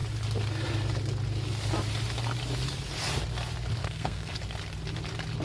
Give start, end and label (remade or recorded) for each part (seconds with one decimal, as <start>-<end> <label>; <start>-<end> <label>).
0.0-3.8 recorded; 3.8-4.4 remade; 4.4-5.4 recorded